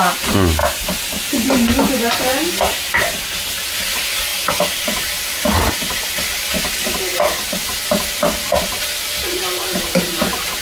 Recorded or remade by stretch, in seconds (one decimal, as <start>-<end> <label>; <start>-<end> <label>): 0.0-10.6 recorded